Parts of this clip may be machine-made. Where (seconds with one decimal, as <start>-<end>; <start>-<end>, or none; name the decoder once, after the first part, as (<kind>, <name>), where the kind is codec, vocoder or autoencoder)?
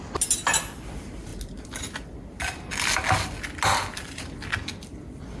none